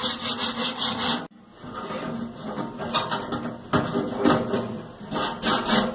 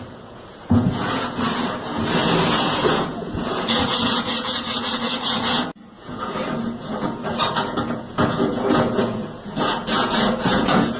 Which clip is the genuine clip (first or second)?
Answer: first